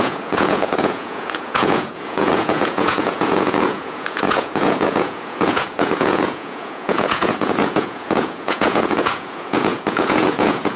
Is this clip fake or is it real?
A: fake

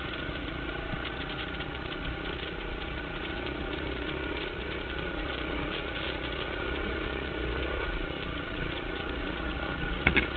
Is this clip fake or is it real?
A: fake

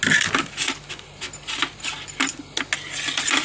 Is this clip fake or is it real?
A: real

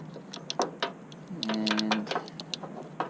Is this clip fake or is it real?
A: real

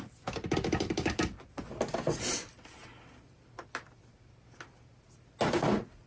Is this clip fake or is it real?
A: real